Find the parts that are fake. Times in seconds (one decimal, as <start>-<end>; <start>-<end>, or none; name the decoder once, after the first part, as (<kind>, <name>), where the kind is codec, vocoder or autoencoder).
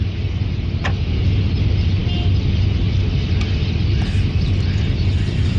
none